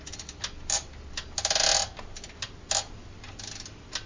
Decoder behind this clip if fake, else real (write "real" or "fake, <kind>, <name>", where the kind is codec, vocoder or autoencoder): real